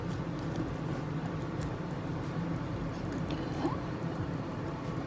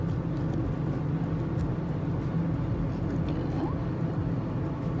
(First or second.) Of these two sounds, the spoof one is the first